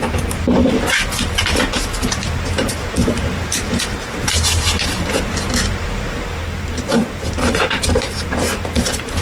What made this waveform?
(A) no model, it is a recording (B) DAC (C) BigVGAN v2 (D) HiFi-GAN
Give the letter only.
C